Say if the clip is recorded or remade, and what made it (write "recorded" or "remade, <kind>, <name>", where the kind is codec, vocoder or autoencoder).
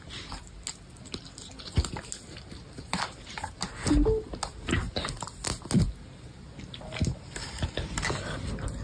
recorded